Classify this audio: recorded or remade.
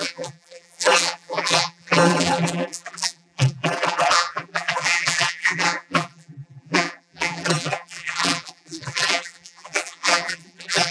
remade